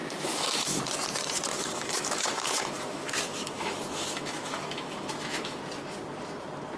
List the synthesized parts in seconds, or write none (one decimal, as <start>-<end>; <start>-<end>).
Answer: 0.0-0.8; 1.5-5.6